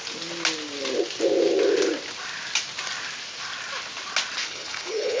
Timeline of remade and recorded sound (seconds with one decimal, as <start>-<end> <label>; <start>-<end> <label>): 0.0-4.4 recorded; 4.4-5.2 remade